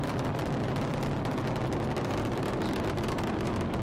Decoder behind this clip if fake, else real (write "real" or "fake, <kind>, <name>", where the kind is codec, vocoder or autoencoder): fake, vocoder, BigVGAN v2